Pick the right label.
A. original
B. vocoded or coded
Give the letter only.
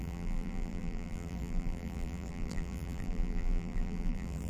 B